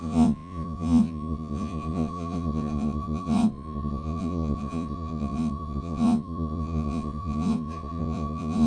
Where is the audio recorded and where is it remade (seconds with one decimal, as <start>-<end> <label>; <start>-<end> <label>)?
0.0-8.7 remade